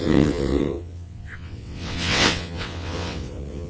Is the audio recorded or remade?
remade